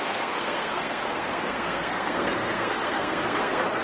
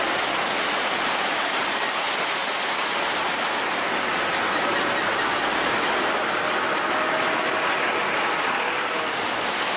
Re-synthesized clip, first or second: first